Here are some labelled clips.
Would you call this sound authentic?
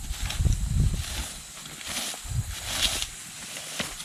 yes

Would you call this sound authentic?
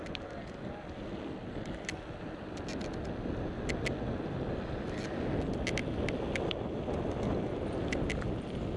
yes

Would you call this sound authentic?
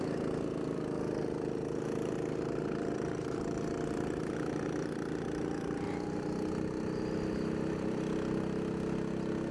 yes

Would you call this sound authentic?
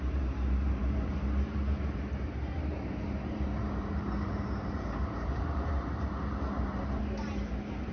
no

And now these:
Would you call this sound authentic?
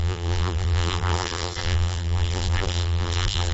no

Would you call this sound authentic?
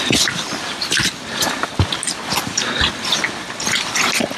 yes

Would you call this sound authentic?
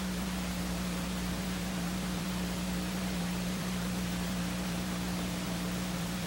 no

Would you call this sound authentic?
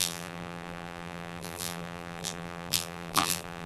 no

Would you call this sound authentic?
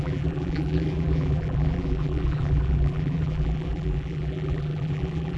no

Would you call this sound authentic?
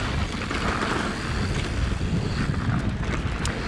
yes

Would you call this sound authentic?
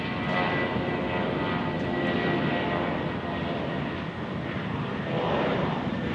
yes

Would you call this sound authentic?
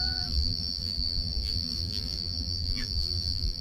no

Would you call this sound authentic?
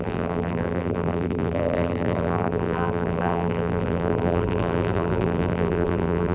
no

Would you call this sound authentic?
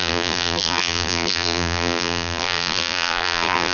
no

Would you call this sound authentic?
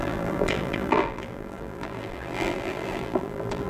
no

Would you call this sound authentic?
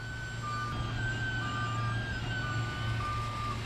yes